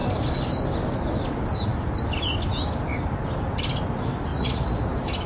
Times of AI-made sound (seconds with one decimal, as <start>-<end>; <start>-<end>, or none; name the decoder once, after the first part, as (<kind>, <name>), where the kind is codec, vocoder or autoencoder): 4.3-4.8 (vocoder, Vocos)